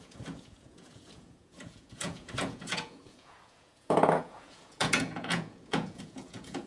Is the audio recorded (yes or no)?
no